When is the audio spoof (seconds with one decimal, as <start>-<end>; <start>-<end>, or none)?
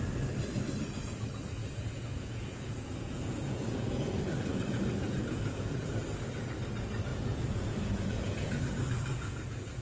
1.6-5.9; 7.1-8.6; 9.1-9.8